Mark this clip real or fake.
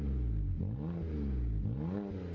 real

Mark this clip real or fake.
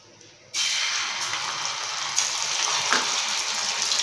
real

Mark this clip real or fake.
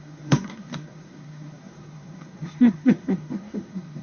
fake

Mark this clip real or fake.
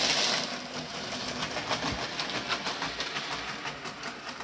real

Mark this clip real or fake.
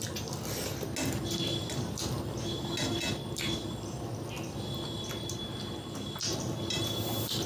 real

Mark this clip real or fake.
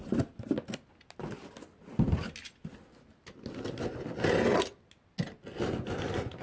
real